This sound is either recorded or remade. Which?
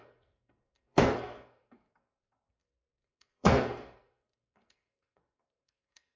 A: remade